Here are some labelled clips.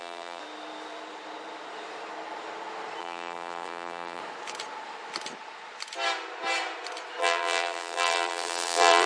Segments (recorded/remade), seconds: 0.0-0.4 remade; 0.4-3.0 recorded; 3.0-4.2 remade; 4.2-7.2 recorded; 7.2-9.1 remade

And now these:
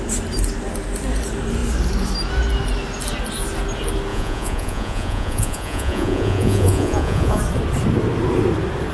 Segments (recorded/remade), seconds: 0.0-4.1 recorded; 4.1-7.4 remade; 7.4-8.9 recorded

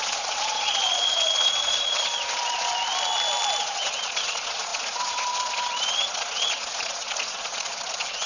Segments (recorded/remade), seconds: 0.0-2.7 remade; 2.7-3.6 recorded; 3.6-8.3 remade

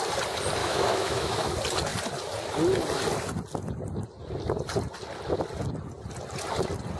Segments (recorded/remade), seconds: 0.0-0.6 recorded; 0.6-1.5 remade; 1.5-7.0 recorded

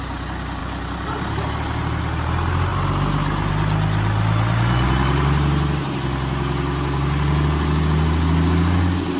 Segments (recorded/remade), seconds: 0.0-9.2 recorded

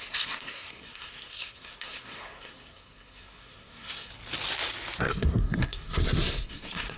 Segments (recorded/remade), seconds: 0.0-4.1 remade; 4.1-5.0 recorded; 5.0-7.0 remade